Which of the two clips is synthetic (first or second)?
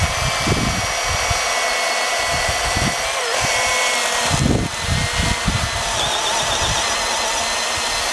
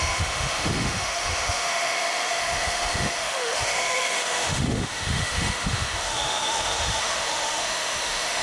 second